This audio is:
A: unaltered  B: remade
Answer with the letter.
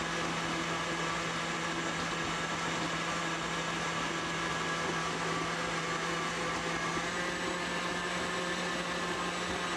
A